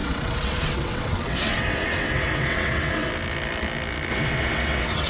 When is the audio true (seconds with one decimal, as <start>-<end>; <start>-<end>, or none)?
3.1-4.1